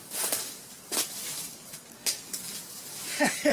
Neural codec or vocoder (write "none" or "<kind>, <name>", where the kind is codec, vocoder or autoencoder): none